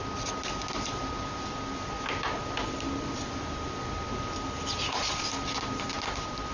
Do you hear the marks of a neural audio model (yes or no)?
no